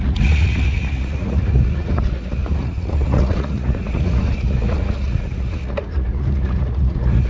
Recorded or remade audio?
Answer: remade